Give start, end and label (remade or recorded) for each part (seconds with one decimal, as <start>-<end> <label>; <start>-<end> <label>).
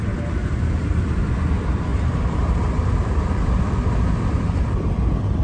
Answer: 0.0-1.9 recorded; 1.9-5.4 remade